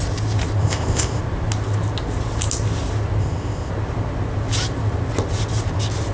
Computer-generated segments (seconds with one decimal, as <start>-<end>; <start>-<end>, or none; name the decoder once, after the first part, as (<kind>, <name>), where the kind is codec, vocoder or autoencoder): 0.6-1.2 (codec, ZipCodec); 3.2-3.7